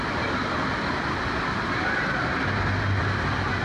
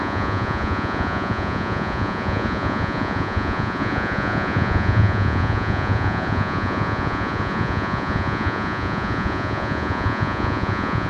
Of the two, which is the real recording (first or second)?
first